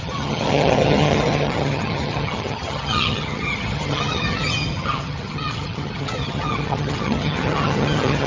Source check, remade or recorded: remade